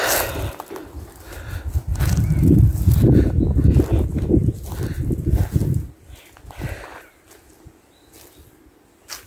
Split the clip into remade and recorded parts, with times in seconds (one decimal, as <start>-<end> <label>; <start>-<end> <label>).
0.0-9.3 recorded